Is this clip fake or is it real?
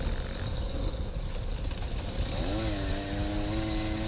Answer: real